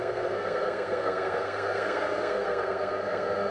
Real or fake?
fake